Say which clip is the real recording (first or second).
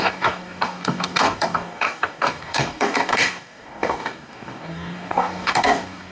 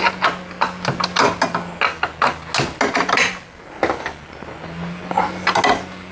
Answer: second